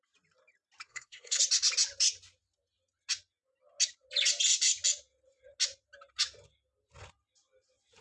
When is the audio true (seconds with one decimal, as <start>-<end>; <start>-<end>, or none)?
0.0-0.9; 1.4-8.0